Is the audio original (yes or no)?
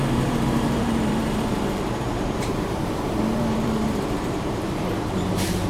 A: no